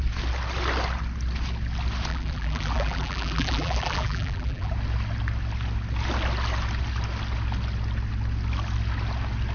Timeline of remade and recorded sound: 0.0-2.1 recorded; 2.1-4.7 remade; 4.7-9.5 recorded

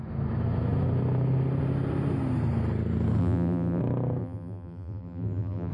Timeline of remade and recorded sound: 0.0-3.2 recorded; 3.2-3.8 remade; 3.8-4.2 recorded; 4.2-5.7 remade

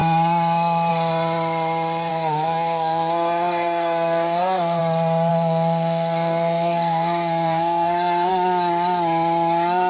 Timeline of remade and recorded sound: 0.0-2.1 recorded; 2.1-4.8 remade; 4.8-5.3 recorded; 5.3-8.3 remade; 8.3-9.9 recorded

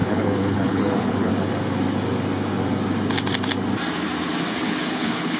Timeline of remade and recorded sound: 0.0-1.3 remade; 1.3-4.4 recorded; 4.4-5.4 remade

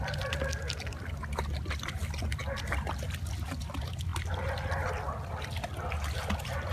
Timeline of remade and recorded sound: 0.0-6.7 recorded

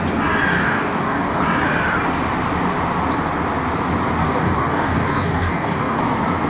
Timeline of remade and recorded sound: 0.0-0.6 recorded; 0.6-1.4 remade; 1.4-4.2 recorded; 4.2-6.0 remade; 6.0-6.5 recorded

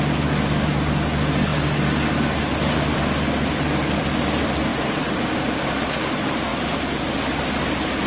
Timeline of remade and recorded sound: 0.0-8.1 recorded